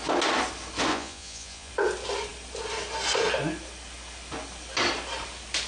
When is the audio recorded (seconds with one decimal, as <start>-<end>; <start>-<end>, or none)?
0.0-0.9; 1.7-5.7